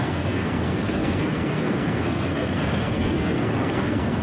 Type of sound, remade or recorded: remade